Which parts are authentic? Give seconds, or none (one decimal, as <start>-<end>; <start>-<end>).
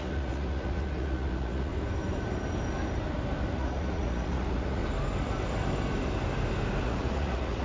1.7-3.5; 4.8-6.8